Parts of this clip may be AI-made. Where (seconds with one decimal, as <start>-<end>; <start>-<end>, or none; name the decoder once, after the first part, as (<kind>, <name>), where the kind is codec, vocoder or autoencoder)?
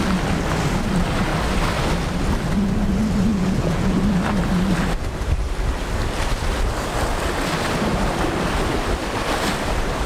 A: 3.3-4.0 (vocoder, Vocos)